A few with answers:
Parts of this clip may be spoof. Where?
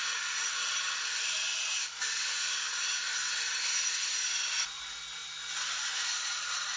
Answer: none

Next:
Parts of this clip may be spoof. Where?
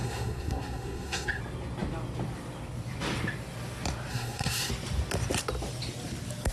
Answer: 0.0-1.4 (codec, SNAC); 4.1-4.7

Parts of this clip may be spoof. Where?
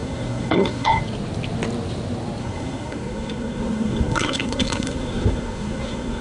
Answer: 0.0-1.0 (codec, SNAC); 2.4-6.2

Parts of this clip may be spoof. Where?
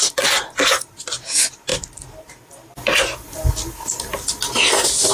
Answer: none